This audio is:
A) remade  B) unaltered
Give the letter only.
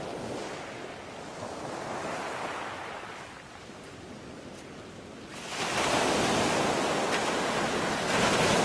B